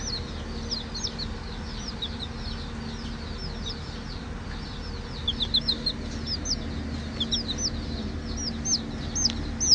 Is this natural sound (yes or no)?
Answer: yes